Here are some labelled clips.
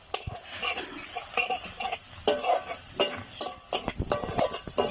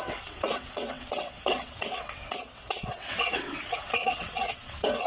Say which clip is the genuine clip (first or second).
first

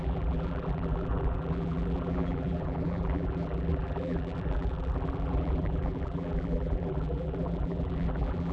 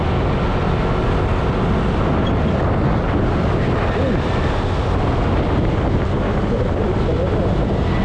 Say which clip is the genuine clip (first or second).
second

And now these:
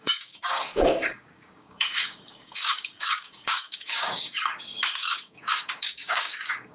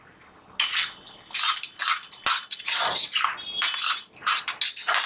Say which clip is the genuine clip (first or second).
second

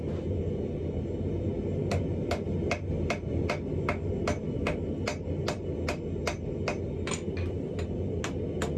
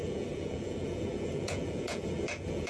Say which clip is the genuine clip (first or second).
first